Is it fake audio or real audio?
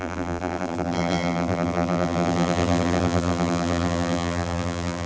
fake